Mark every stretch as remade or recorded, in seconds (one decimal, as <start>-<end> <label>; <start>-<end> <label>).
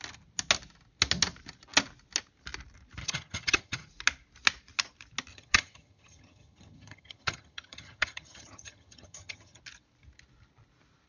0.0-3.0 recorded; 3.0-3.9 remade; 3.9-5.3 recorded; 5.3-9.6 remade; 9.6-11.1 recorded